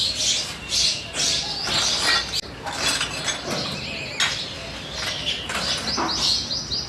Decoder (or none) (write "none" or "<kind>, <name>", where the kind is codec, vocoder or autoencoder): none